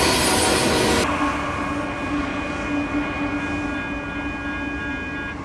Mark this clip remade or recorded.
recorded